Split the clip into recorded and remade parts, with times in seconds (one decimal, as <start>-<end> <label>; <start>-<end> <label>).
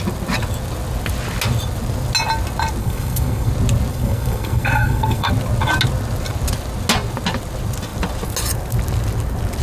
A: 0.0-2.8 recorded; 2.8-3.5 remade; 3.5-3.9 recorded; 3.9-5.3 remade; 5.3-9.6 recorded